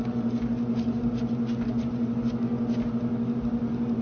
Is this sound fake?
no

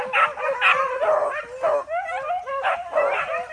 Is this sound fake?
no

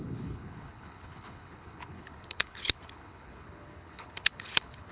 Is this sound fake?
yes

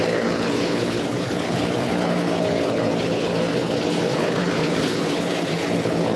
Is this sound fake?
yes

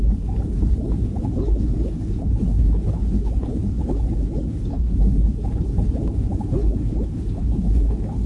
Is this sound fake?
yes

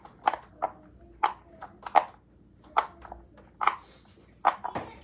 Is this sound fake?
no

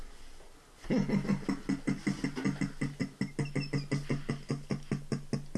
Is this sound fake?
no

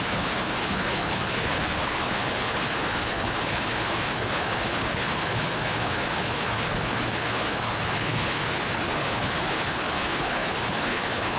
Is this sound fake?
yes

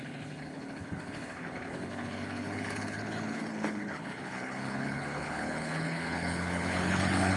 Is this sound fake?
yes